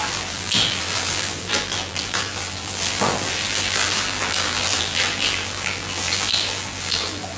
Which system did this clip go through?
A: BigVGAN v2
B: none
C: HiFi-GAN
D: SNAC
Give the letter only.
A